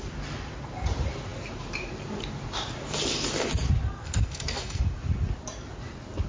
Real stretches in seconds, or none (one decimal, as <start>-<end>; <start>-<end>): 0.0-4.0; 4.8-6.3